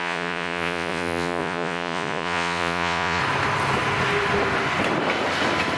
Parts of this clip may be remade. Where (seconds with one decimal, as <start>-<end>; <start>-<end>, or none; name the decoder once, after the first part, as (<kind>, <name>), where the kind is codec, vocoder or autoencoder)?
0.0-3.2 (vocoder, Vocos)